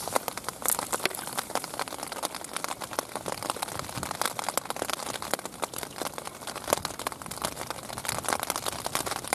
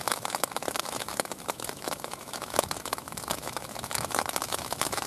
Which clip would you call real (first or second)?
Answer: first